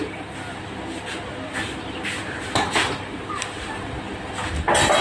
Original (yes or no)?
yes